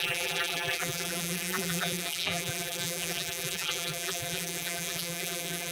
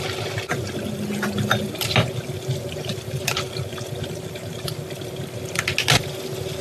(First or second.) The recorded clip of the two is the second